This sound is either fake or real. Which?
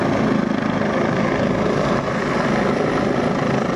real